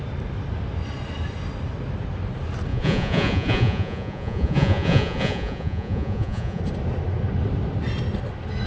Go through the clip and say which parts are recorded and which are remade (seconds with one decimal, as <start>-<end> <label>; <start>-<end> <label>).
0.0-2.7 recorded; 2.7-6.6 remade; 6.6-8.7 recorded